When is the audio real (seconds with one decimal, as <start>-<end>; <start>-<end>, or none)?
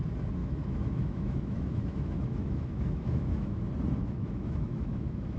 0.0-0.4; 3.6-4.0